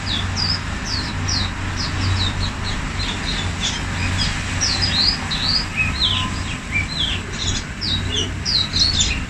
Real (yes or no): yes